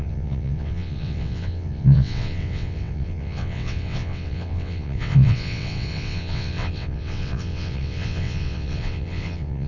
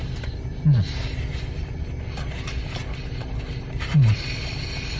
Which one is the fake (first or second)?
first